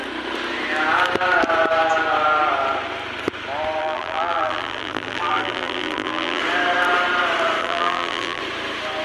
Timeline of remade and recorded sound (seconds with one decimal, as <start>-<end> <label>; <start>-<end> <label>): 0.0-3.8 recorded; 3.8-6.4 remade; 6.4-7.6 recorded; 7.6-8.4 remade; 8.4-9.0 recorded